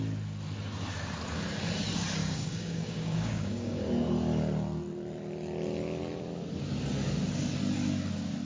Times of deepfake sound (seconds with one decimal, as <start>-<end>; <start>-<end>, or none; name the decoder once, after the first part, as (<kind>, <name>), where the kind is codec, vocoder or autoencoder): 2.2-3.9 (codec, DAC)